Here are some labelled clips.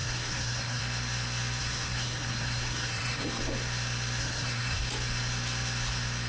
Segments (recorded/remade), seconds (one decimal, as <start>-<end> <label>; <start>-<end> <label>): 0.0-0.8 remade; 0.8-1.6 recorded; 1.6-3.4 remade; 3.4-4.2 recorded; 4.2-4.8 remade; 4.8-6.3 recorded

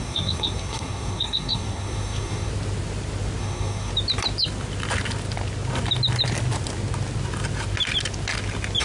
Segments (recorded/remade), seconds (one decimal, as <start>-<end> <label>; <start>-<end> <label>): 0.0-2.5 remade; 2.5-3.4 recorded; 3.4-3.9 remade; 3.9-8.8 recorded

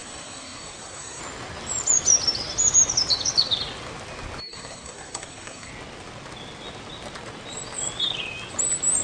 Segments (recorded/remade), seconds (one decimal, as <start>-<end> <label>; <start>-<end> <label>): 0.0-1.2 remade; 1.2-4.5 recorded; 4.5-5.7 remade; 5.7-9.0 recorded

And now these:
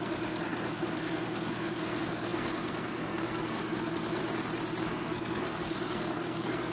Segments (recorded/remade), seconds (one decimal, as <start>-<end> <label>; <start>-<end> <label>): 0.0-4.2 remade; 4.2-4.8 recorded; 4.8-6.7 remade

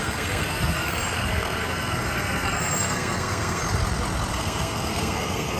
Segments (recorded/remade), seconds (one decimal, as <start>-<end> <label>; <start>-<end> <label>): 0.0-3.6 remade; 3.6-4.3 recorded; 4.3-5.6 remade

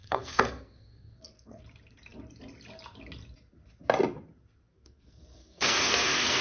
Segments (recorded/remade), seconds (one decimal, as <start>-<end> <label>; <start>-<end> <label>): 0.0-1.6 remade; 1.6-4.7 recorded; 4.7-6.4 remade

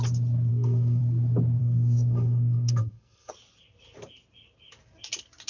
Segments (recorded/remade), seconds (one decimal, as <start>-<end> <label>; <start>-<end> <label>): 0.0-0.5 recorded; 0.5-1.0 remade; 1.0-1.6 recorded; 1.6-3.3 remade; 3.3-5.5 recorded